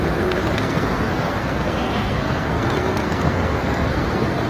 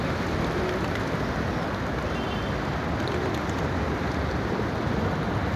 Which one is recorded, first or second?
second